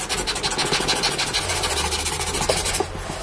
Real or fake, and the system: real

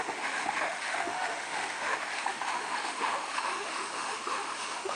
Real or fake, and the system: fake, autoencoder, DAC-VAE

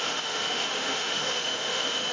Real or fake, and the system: fake, autoencoder, DAC-VAE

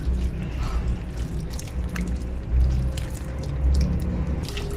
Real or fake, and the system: real